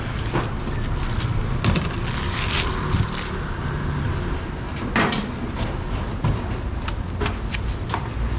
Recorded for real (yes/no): yes